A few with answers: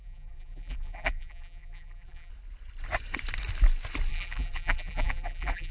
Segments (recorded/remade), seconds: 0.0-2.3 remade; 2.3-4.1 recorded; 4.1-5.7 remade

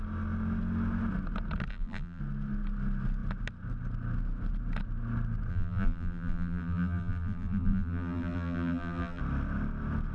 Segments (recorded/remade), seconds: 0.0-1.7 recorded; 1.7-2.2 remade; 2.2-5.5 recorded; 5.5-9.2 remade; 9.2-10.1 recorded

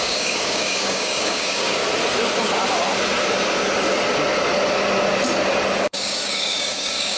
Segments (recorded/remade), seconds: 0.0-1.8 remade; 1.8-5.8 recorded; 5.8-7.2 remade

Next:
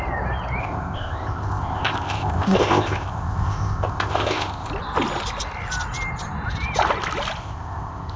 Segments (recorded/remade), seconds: 0.0-0.6 recorded; 0.6-4.7 remade; 4.7-7.4 recorded; 7.4-8.2 remade

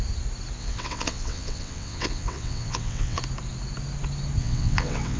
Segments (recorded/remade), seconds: 0.0-0.6 recorded; 0.6-3.2 remade; 3.2-4.4 recorded; 4.4-5.2 remade

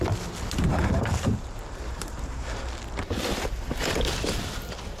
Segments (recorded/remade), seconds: 0.0-0.7 recorded; 0.7-2.6 remade; 2.6-5.0 recorded